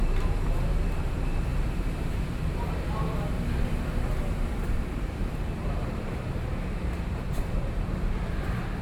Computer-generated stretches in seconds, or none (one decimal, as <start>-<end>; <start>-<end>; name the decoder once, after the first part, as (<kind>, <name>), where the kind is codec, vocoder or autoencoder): 0.0-8.8 (vocoder, BigVGAN v2)

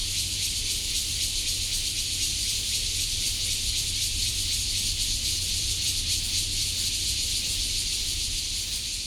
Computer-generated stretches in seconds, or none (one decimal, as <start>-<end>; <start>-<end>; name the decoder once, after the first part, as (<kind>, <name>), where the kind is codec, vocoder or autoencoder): 0.0-9.1 (vocoder, BigVGAN v2)

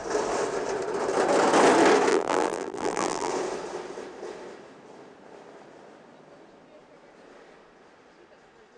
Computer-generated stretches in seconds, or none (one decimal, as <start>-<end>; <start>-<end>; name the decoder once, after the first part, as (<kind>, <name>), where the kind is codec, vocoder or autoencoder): 2.1-3.3 (vocoder, BigVGAN v2)

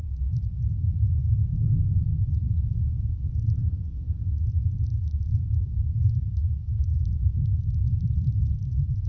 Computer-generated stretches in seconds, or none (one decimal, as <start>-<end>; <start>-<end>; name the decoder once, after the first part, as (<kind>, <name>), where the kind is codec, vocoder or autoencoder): 4.9-7.2 (vocoder, BigVGAN v2)

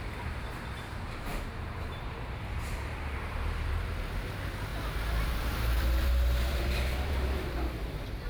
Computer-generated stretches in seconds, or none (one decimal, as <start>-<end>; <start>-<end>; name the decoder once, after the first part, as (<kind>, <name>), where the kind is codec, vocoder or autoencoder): 0.0-8.3 (vocoder, BigVGAN v2)

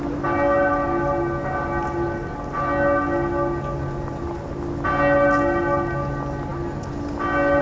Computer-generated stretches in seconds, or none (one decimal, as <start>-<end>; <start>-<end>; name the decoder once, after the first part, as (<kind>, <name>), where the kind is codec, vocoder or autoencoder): none

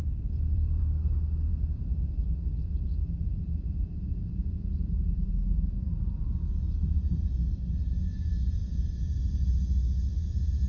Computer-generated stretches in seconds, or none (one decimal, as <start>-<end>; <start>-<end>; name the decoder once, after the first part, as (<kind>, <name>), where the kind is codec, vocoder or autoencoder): 0.0-0.8 (vocoder, BigVGAN v2); 1.5-6.7

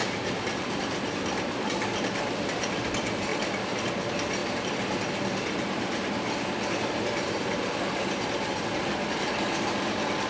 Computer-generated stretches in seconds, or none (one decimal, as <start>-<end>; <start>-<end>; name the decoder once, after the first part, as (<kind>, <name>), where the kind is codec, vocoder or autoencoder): 0.0-3.3 (vocoder, BigVGAN v2); 3.9-10.3